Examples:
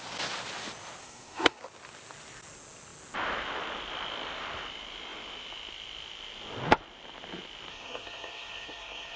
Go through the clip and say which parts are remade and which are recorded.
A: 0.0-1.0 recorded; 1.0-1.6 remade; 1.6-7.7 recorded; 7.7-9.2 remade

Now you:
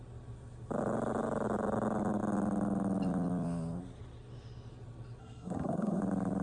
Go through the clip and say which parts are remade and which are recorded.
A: 0.0-5.2 recorded; 5.2-6.0 remade; 6.0-6.4 recorded

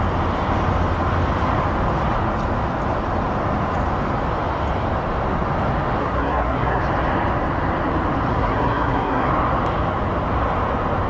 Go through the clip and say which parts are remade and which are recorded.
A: 0.0-6.0 recorded; 6.0-6.8 remade; 6.8-8.3 recorded; 8.3-9.3 remade; 9.3-11.1 recorded

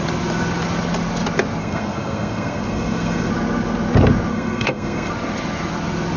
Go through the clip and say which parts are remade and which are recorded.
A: 0.0-1.6 recorded; 1.6-3.3 remade; 3.3-4.3 recorded; 4.3-5.1 remade; 5.1-6.2 recorded